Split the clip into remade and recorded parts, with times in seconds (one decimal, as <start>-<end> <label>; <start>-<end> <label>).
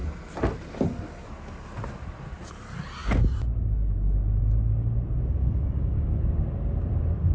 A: 0.0-5.4 recorded; 5.4-6.2 remade; 6.2-7.3 recorded